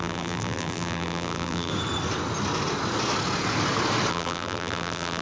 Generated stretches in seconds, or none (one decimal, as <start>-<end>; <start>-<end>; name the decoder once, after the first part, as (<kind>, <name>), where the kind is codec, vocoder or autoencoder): 0.0-1.7 (vocoder, BigVGAN v2); 4.1-5.2